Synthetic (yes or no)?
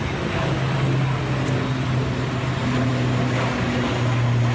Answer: no